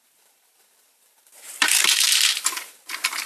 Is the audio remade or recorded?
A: remade